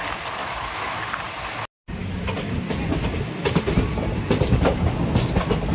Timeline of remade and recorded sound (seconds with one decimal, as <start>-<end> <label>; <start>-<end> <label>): 0.0-0.4 recorded; 0.4-1.0 remade; 1.0-5.7 recorded